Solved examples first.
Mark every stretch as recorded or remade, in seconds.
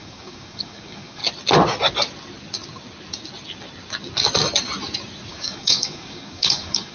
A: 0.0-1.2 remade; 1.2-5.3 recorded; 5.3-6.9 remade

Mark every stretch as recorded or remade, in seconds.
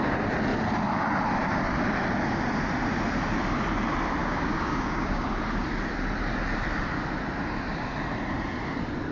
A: 0.0-4.2 recorded; 4.2-5.4 remade; 5.4-9.1 recorded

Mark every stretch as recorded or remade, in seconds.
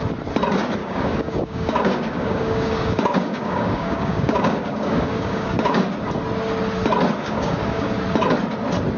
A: 0.0-0.8 recorded; 0.8-5.8 remade; 5.8-7.2 recorded; 7.2-7.9 remade; 7.9-9.0 recorded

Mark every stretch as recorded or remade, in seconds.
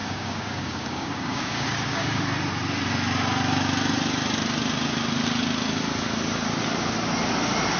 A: 0.0-2.2 remade; 2.2-7.8 recorded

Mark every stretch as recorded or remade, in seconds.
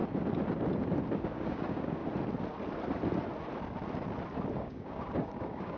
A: 0.0-1.1 recorded; 1.1-2.0 remade; 2.0-4.5 recorded; 4.5-5.8 remade